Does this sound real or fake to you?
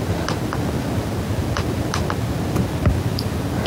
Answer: real